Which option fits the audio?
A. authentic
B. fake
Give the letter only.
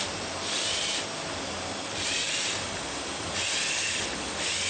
A